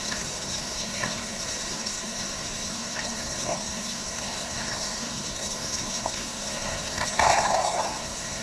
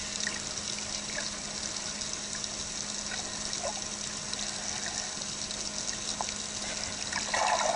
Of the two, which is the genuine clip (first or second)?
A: second